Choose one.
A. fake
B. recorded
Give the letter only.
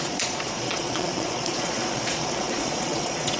A